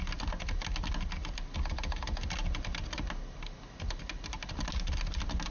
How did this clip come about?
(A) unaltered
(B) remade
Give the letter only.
A